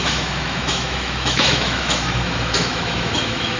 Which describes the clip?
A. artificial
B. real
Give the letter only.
A